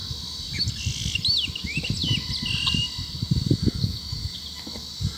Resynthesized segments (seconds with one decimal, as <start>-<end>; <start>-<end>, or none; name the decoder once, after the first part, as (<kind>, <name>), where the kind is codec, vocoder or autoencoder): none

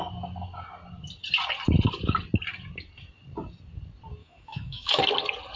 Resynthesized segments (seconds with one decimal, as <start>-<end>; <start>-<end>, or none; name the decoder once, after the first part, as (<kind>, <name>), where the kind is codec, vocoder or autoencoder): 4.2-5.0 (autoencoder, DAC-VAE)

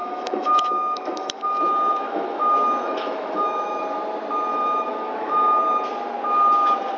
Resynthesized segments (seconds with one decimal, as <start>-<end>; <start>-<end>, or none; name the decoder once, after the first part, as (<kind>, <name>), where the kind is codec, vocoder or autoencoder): 0.0-3.8 (autoencoder, DAC-VAE); 4.5-5.6

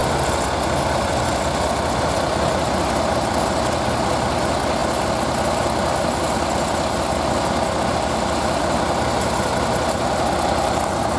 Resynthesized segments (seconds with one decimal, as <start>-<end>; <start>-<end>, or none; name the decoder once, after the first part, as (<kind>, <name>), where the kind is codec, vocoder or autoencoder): none

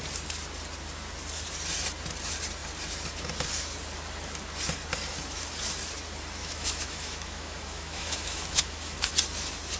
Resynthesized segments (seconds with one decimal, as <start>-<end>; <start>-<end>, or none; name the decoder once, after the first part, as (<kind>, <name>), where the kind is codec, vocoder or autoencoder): 6.4-9.1 (autoencoder, DAC-VAE)

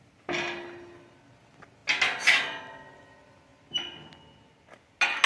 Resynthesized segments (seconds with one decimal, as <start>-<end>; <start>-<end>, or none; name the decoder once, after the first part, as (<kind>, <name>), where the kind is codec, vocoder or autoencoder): none

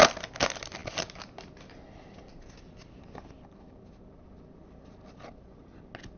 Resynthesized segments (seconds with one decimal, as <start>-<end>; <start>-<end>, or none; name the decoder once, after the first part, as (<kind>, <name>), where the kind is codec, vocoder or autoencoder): none